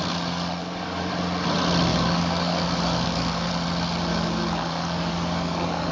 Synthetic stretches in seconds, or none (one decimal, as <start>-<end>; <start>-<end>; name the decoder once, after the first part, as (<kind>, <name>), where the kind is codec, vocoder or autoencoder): 0.6-1.1 (codec, DAC); 1.9-3.5; 4.1-5.9